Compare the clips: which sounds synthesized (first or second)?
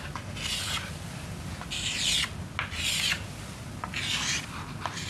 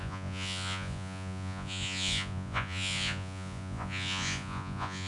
second